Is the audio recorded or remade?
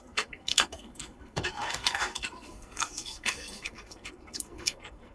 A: remade